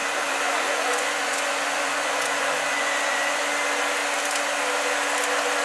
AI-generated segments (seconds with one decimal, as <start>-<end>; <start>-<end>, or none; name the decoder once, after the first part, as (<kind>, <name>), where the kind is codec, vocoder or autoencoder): 0.0-3.4 (vocoder, Vocos)